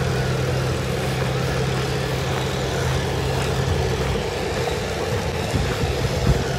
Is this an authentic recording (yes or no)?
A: yes